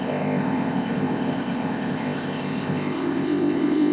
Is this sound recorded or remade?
remade